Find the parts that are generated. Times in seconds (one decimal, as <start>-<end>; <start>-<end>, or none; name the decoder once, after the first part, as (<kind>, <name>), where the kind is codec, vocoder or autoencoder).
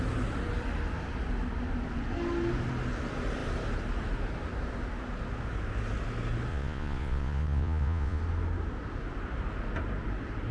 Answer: 6.5-8.2 (vocoder, Vocos)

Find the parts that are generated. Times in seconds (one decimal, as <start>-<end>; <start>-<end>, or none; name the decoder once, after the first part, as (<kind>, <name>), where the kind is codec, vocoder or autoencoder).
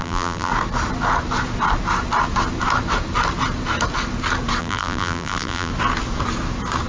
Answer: 0.0-0.5 (vocoder, BigVGAN v2); 4.6-5.7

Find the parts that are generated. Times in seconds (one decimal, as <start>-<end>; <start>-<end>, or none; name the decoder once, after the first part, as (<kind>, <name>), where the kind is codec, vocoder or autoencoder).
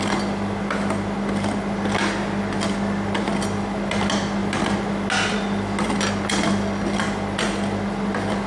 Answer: none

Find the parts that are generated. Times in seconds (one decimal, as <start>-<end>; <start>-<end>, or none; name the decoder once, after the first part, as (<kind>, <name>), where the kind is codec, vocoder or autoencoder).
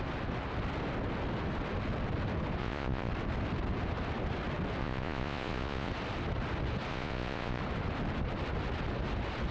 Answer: 2.6-3.1 (vocoder, Vocos); 4.8-5.9; 6.9-7.6